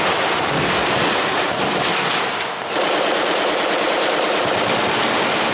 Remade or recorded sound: recorded